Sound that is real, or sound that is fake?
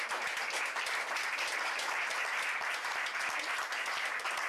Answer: real